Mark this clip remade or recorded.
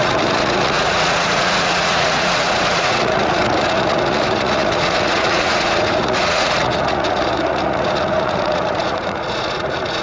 remade